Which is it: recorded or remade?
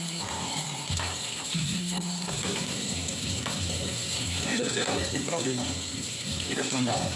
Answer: remade